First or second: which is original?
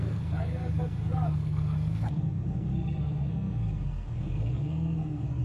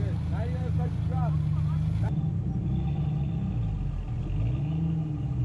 second